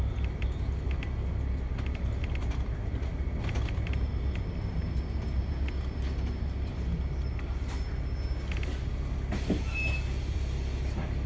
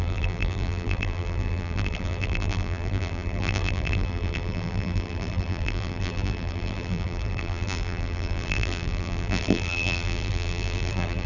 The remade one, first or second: second